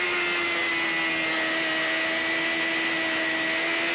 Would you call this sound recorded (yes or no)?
yes